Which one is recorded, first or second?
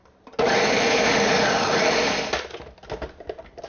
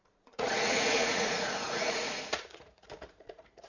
first